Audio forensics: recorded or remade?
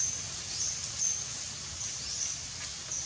recorded